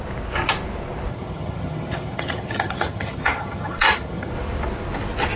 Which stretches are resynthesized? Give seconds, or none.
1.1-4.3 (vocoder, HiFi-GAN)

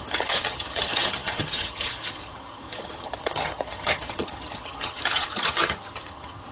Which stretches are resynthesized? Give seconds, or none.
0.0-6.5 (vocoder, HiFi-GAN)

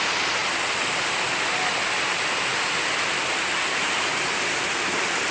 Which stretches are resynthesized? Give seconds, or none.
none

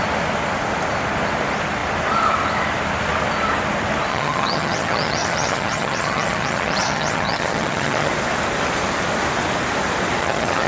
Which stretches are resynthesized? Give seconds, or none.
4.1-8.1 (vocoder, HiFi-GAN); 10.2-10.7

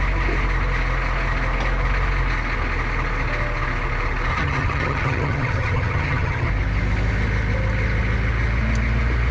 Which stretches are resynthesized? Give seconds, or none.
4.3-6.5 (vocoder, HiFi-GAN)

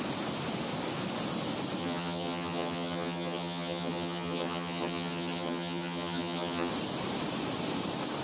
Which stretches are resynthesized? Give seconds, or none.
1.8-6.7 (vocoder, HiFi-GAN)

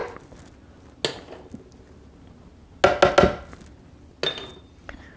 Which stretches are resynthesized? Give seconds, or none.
none

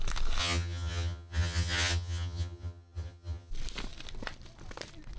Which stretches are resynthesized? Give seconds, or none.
0.4-3.5 (vocoder, HiFi-GAN)